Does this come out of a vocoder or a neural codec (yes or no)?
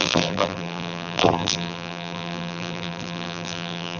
yes